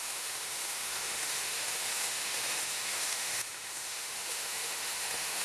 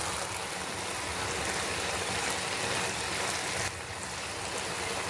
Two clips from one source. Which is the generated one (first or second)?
first